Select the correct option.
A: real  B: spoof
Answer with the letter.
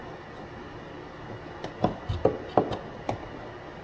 A